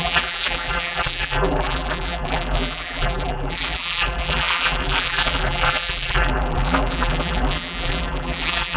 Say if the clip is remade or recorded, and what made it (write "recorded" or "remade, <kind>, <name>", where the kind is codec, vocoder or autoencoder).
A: remade, vocoder, BigVGAN v2